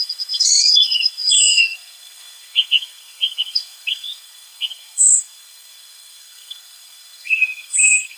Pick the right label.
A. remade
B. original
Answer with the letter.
A